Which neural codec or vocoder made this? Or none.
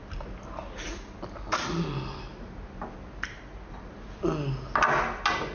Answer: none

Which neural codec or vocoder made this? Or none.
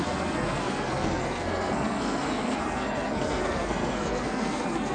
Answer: codec, SNAC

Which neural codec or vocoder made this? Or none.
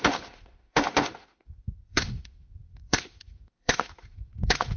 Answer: autoencoder, DAC-VAE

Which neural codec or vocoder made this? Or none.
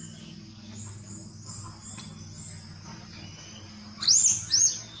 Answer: none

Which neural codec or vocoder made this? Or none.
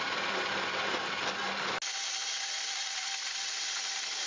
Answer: none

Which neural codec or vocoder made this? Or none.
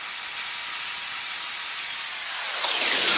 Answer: none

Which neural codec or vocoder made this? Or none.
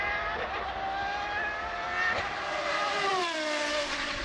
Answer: vocoder, BigVGAN v2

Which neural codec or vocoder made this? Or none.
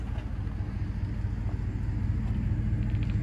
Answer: none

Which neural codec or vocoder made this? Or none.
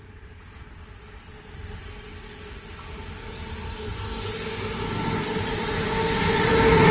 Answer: none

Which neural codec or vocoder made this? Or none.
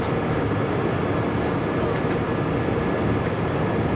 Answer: none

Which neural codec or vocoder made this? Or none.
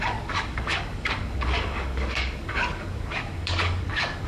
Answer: codec, DAC